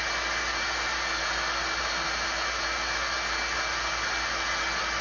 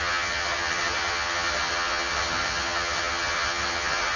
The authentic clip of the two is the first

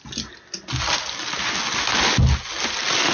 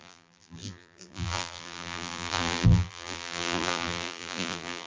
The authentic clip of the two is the first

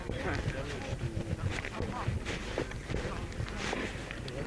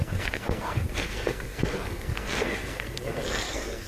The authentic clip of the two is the first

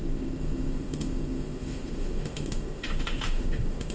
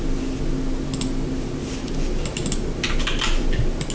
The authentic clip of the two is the second